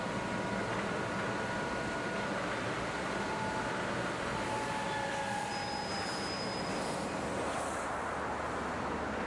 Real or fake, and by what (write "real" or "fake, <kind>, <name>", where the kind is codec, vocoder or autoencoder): real